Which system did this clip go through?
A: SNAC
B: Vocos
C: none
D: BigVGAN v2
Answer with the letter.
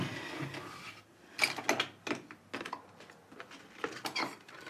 C